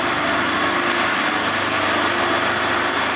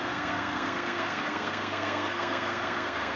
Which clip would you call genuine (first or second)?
first